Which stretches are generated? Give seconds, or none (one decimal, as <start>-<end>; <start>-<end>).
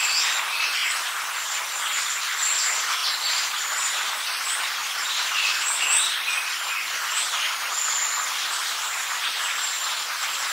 none